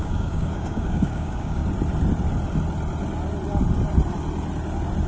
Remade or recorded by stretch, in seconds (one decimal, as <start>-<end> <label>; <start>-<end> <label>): 0.0-1.6 remade; 1.6-5.1 recorded